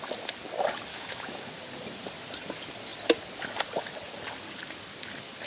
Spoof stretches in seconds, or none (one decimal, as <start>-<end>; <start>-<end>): 0.9-1.5